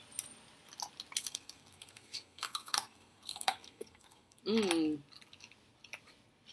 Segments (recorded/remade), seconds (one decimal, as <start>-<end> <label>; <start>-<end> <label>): 0.0-1.2 recorded; 1.2-4.4 remade; 4.4-6.5 recorded